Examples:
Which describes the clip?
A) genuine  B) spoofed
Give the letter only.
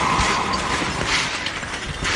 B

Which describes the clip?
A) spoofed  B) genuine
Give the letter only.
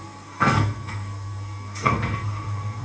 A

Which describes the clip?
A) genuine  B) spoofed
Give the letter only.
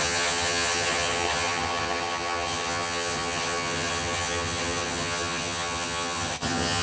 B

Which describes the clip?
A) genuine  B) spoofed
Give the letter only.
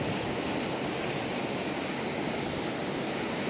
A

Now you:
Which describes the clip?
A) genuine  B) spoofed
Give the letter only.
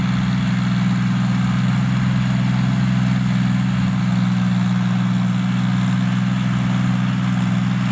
A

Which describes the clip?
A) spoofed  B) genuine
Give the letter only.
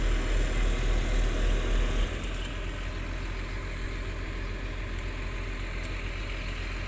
B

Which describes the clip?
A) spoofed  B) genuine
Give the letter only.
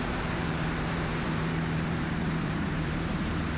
A